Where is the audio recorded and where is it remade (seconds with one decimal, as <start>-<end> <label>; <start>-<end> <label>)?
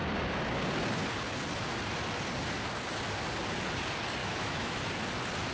0.0-4.2 recorded; 4.2-4.8 remade; 4.8-5.5 recorded